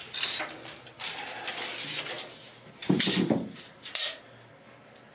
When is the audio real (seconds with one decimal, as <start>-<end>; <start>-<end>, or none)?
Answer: 0.0-2.8; 4.5-5.1